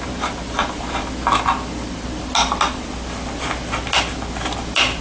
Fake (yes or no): no